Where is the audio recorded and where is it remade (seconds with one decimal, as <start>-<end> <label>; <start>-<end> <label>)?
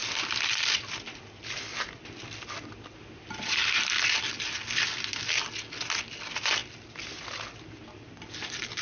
0.0-8.8 recorded